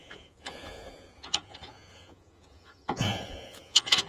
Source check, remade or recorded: remade